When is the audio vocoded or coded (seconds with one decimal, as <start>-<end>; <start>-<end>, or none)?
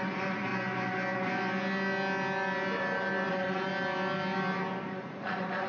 0.0-0.5; 3.3-3.7; 4.9-5.7